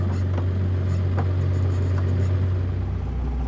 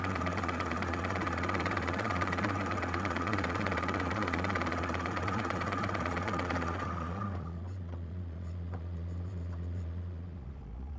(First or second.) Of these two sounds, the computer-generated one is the second